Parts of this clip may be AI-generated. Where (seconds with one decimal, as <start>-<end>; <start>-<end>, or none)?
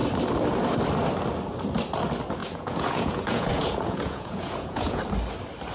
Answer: 2.4-5.0